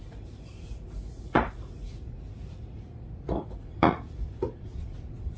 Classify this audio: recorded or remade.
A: remade